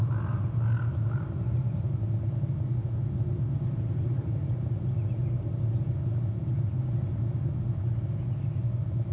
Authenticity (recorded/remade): recorded